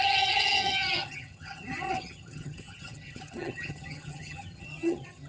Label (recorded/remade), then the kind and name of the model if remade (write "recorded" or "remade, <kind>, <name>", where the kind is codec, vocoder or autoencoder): remade, vocoder, HiFi-GAN